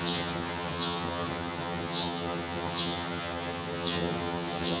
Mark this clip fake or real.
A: fake